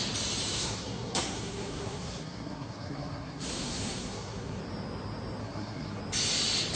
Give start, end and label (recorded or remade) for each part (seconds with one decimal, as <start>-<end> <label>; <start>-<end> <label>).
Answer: 0.0-0.5 recorded; 0.5-4.6 remade; 4.6-5.4 recorded; 5.4-6.0 remade; 6.0-6.8 recorded